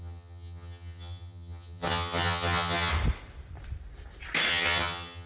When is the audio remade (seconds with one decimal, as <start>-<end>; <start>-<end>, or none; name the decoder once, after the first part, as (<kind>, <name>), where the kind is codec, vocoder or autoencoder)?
0.0-2.9 (vocoder, HiFi-GAN); 4.5-5.3